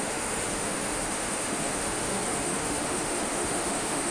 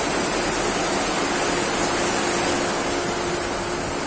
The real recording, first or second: second